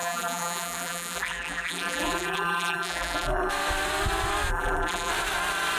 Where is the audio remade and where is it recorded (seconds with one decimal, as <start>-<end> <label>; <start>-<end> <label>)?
0.0-3.5 remade; 3.5-4.5 recorded; 4.5-5.1 remade; 5.1-5.8 recorded